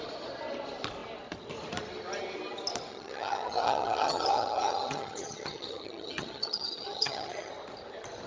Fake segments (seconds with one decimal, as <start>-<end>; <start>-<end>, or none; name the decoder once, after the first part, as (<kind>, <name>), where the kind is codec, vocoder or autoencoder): 2.9-7.5 (vocoder, HiFi-GAN)